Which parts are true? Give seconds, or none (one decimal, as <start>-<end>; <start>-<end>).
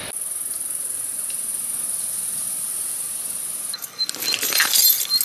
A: 0.0-5.2